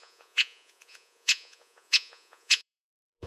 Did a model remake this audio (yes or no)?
yes